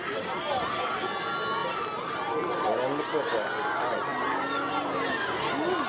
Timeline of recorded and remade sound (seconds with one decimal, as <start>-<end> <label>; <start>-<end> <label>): 0.0-1.6 recorded; 1.6-2.2 remade; 2.2-5.9 recorded